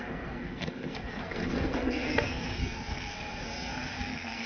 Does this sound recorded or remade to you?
remade